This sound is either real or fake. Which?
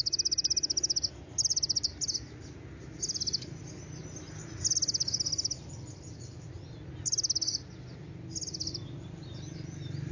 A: real